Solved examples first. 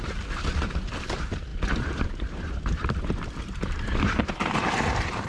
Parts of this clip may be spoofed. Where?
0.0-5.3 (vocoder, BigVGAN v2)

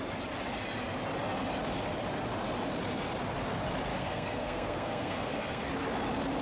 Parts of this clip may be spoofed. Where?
3.9-5.7 (codec, SNAC)

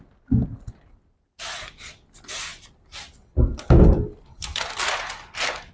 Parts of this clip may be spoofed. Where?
none

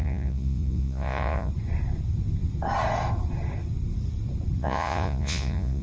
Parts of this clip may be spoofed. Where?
0.0-1.5 (vocoder, Vocos); 4.6-5.8

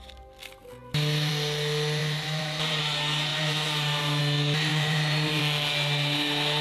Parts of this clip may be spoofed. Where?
2.0-2.8 (vocoder, BigVGAN v2); 3.3-4.2; 4.7-5.4